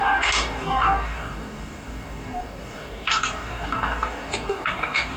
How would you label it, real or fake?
fake